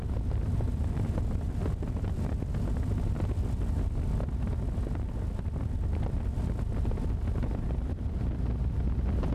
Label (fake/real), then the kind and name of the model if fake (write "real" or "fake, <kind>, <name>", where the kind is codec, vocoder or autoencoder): real